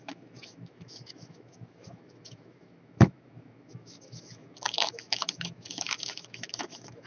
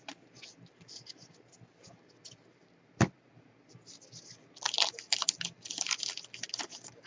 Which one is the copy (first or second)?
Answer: first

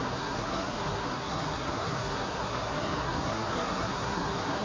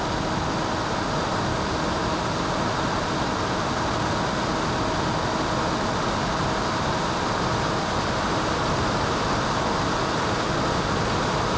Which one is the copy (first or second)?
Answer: first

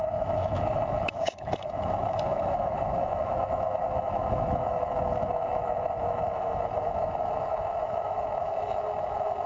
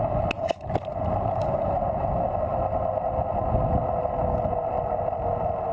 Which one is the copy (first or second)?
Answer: first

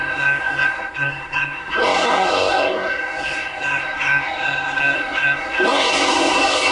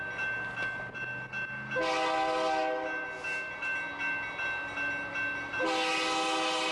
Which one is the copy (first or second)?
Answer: first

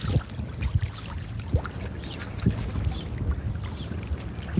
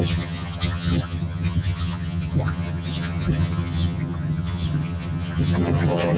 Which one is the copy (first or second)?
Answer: second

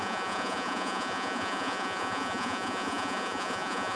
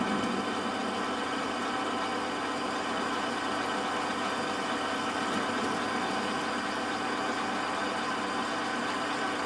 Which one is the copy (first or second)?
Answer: first